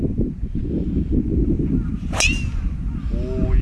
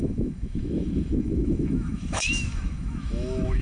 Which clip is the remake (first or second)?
second